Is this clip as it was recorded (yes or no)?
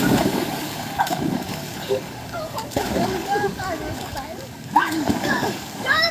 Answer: no